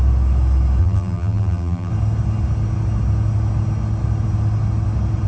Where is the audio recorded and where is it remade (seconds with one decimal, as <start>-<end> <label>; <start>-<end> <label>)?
0.0-0.8 recorded; 0.8-1.9 remade; 1.9-5.3 recorded